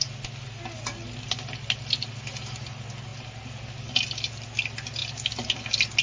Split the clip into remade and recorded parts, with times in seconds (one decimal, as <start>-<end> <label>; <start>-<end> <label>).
0.0-6.0 recorded